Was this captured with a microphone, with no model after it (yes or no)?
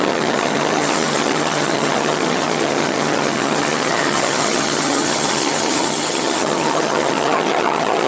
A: no